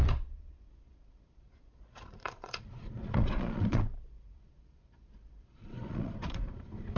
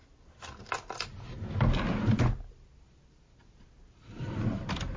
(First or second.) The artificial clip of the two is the first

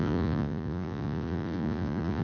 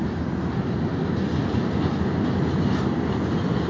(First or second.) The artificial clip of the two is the first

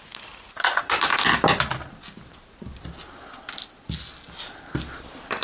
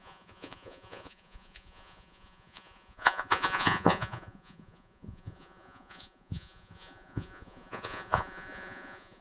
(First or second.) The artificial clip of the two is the second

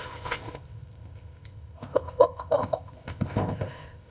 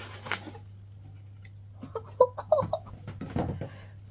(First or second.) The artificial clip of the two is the first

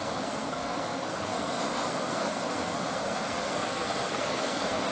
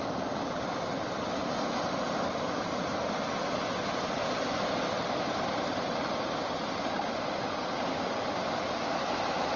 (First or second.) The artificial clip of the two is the first